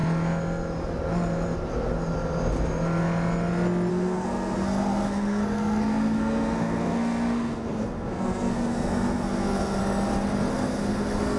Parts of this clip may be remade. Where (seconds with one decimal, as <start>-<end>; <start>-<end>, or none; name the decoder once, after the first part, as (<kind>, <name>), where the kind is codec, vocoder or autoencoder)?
3.9-9.8 (codec, SNAC); 10.5-11.4